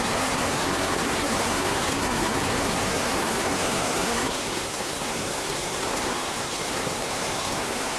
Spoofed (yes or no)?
yes